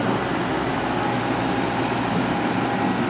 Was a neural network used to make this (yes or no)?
no